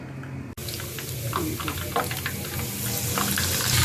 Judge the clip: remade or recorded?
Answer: recorded